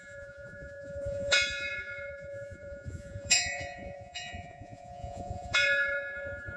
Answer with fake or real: fake